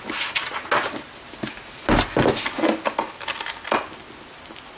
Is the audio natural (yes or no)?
yes